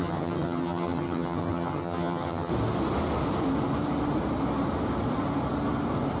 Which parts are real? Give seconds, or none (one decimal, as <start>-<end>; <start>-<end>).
2.5-6.2